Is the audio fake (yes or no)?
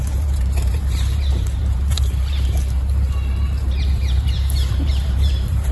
yes